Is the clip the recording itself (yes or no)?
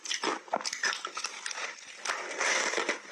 yes